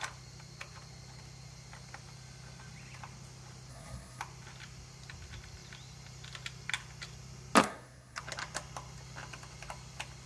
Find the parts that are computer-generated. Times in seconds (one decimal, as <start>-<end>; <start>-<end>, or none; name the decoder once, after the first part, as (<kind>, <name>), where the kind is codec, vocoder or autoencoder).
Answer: 3.7-4.2 (codec, SNAC); 7.6-8.2